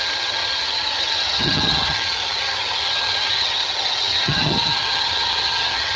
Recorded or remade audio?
remade